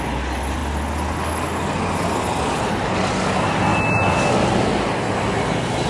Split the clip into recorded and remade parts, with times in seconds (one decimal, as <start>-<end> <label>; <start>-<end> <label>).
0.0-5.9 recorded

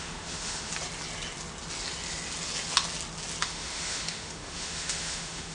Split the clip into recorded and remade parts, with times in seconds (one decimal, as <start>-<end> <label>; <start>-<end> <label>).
0.0-0.7 remade; 0.7-3.4 recorded; 3.4-5.5 remade

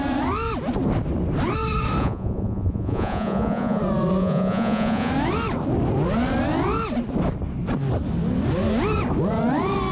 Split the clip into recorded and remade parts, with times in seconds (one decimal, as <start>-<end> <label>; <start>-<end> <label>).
0.0-2.0 recorded; 2.0-3.8 remade; 3.8-4.2 recorded; 4.2-5.1 remade; 5.1-9.9 recorded

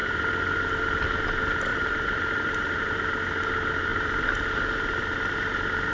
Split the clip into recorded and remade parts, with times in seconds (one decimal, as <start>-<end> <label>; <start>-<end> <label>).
0.0-0.7 remade; 0.7-1.7 recorded; 1.7-2.8 remade; 2.8-3.9 recorded; 3.9-4.5 remade; 4.5-5.9 recorded